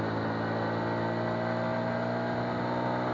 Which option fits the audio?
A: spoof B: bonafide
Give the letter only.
B